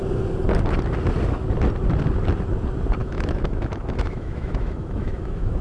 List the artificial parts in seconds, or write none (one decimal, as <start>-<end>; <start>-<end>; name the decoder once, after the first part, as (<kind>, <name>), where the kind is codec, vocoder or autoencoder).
3.0-5.6 (autoencoder, DAC-VAE)